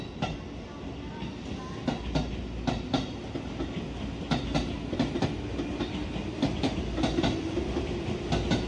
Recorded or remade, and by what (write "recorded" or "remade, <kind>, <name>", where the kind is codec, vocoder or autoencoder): recorded